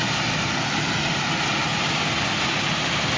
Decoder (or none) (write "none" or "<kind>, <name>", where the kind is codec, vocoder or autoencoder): none